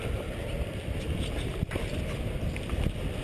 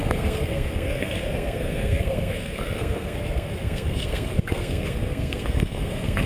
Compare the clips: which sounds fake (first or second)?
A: second